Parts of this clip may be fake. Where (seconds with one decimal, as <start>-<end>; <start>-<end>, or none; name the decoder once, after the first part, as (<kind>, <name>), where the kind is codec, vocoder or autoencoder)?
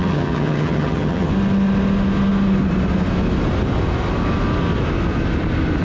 0.0-1.3 (vocoder, HiFi-GAN)